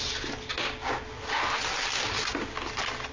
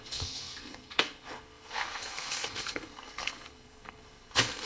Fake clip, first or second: second